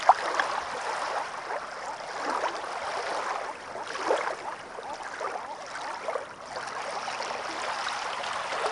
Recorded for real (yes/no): yes